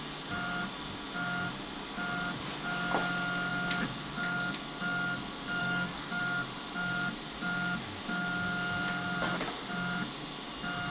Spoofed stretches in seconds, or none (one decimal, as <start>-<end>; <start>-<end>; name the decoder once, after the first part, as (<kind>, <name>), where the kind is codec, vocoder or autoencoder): 5.6-6.2 (codec, DAC)